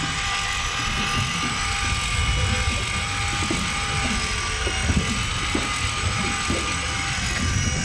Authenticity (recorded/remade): recorded